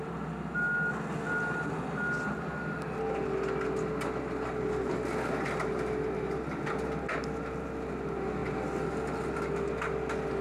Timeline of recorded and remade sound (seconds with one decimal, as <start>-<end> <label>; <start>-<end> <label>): 0.0-10.4 recorded